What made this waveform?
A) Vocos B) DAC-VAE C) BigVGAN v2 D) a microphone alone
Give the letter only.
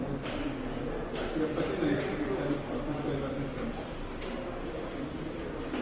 D